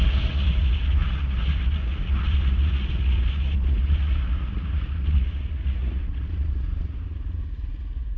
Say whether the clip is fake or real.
fake